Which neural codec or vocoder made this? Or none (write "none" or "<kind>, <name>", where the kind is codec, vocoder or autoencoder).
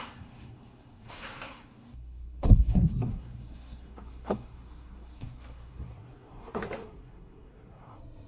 codec, SNAC